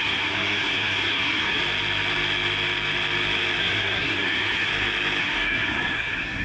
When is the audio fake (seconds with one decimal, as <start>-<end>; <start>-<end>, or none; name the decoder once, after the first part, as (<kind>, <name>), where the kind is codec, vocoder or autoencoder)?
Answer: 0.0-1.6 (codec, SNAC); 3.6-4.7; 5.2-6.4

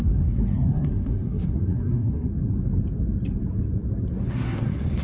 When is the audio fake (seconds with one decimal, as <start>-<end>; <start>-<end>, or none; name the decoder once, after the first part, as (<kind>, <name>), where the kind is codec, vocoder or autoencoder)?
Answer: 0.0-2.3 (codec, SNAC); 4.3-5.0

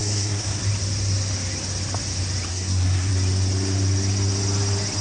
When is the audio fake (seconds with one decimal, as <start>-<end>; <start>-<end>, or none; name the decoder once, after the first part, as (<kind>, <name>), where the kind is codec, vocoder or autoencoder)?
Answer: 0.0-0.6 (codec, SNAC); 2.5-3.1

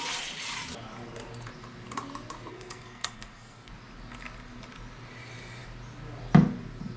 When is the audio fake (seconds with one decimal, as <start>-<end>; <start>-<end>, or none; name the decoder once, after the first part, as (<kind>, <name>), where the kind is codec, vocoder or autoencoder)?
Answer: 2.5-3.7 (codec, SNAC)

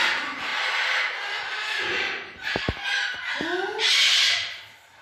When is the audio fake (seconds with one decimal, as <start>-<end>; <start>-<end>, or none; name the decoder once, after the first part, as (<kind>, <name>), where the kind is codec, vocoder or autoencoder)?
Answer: none

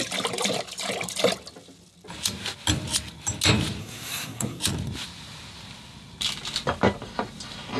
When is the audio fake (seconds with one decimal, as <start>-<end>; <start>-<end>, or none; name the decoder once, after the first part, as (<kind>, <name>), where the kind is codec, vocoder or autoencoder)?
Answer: 3.8-4.6 (codec, SNAC)

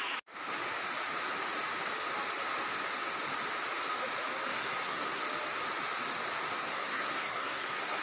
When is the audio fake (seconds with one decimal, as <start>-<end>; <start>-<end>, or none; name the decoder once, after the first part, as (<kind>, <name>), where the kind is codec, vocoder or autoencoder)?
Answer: 4.5-5.2 (codec, SNAC); 6.7-8.0

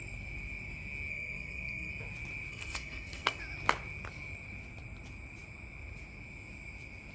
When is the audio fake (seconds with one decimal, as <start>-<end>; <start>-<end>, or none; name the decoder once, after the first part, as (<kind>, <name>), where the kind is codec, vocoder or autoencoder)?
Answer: 1.1-1.9 (codec, SNAC); 2.5-3.4